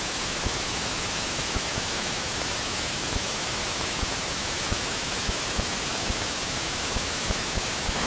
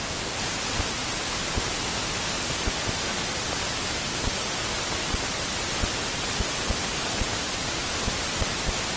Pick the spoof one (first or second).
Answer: first